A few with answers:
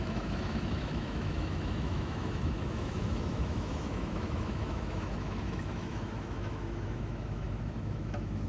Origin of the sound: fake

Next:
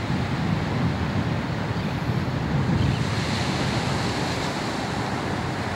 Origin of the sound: real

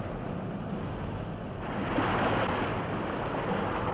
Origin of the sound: real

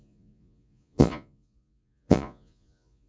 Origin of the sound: fake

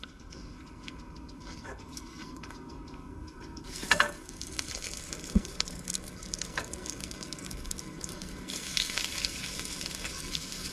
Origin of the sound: fake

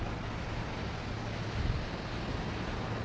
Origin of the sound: real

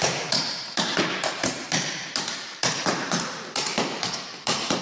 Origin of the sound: fake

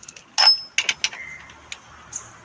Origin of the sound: real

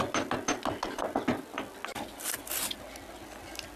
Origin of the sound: real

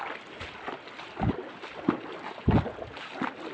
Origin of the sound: real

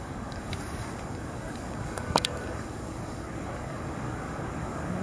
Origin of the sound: fake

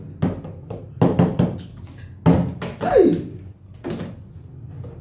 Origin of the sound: real